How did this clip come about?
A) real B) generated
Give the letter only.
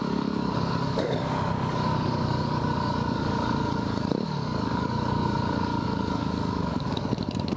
B